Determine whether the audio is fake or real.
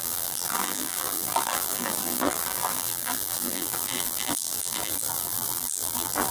fake